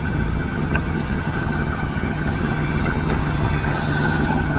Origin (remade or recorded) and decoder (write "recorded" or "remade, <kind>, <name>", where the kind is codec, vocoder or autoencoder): remade, vocoder, HiFi-GAN